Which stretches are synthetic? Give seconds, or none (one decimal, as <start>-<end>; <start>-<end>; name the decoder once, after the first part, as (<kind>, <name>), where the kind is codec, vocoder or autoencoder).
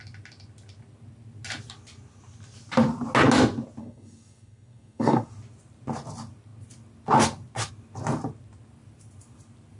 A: 3.8-5.3 (codec, SNAC)